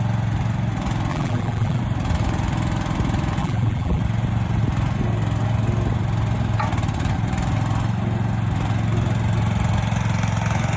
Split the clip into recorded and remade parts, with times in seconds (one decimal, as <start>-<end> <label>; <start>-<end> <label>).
0.0-1.1 recorded; 1.1-1.8 remade; 1.8-3.4 recorded; 3.4-4.0 remade; 4.0-10.8 recorded